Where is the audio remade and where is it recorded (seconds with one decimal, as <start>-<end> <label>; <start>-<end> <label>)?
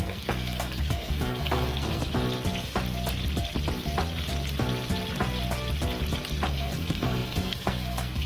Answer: 0.0-2.0 remade; 2.0-6.5 recorded; 6.5-8.3 remade